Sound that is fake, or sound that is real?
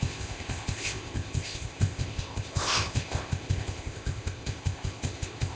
fake